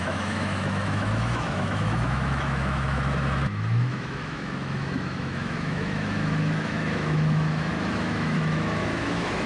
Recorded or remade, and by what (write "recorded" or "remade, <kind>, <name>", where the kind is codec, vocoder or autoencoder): remade, autoencoder, DAC-VAE